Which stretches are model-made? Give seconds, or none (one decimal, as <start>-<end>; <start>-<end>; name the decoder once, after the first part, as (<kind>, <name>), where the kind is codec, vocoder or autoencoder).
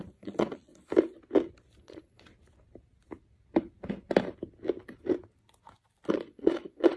0.0-0.7 (vocoder, Vocos); 1.8-2.3; 6.1-7.0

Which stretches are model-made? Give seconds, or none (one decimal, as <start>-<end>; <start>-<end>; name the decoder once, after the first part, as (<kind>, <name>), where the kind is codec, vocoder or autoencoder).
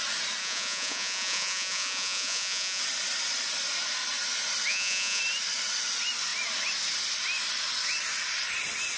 0.4-2.8 (vocoder, Vocos); 4.7-5.2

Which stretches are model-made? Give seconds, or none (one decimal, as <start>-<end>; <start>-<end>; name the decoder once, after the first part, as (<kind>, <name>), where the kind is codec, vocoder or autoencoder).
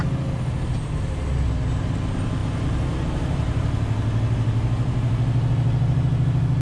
none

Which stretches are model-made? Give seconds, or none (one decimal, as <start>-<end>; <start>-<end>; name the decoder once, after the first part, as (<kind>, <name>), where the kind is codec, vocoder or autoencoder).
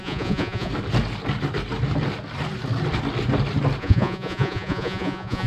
0.0-0.7 (vocoder, Vocos); 3.8-5.5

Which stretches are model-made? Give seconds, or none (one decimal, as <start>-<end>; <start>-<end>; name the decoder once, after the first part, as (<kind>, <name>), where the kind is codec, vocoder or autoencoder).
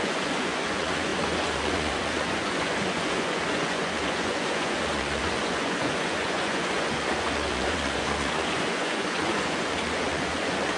0.0-10.8 (vocoder, Vocos)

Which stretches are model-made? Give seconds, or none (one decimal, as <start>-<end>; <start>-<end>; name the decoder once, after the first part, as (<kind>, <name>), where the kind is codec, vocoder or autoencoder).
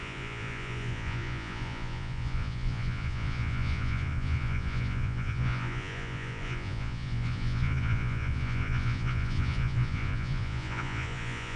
0.0-11.6 (vocoder, Vocos)